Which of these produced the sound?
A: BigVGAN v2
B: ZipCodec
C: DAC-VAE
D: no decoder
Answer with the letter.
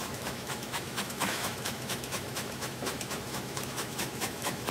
C